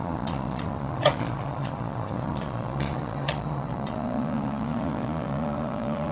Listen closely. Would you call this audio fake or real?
fake